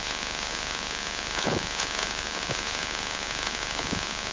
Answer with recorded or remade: remade